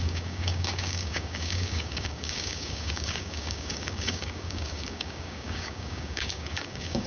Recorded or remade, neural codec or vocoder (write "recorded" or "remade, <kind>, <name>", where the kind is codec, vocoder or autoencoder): remade, codec, DAC